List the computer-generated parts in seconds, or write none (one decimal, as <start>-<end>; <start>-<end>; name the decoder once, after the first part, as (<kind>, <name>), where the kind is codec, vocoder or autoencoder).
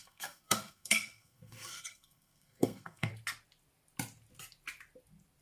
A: 0.0-3.1 (codec, SNAC)